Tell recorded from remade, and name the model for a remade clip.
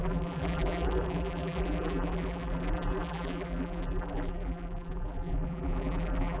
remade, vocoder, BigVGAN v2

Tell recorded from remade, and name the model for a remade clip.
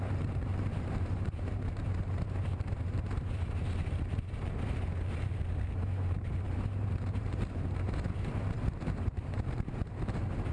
remade, vocoder, BigVGAN v2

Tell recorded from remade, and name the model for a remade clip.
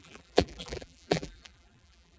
remade, vocoder, BigVGAN v2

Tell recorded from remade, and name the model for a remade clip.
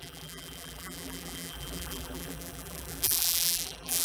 remade, vocoder, BigVGAN v2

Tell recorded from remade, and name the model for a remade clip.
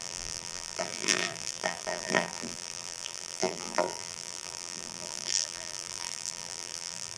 remade, vocoder, BigVGAN v2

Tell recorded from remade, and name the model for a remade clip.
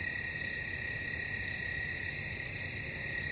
recorded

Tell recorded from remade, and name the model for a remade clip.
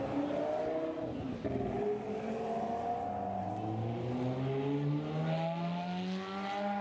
recorded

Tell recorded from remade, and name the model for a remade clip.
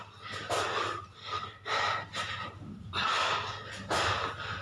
recorded